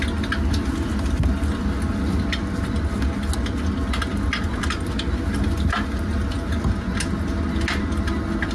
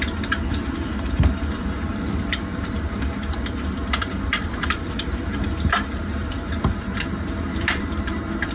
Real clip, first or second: first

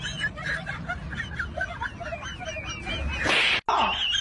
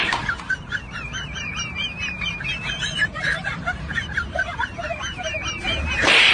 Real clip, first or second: first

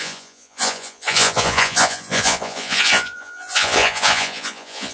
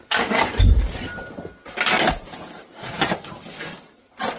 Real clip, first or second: second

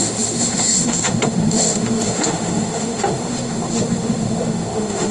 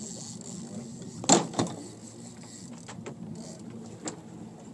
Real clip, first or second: second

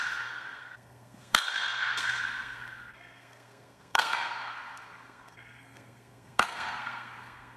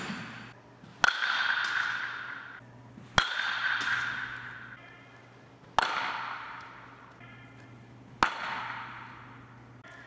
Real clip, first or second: second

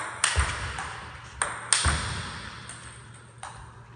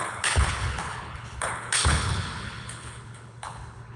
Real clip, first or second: first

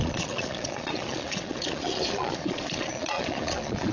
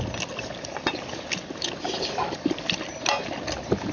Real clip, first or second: second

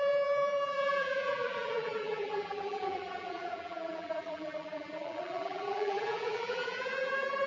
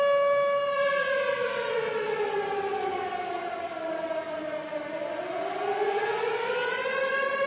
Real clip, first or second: second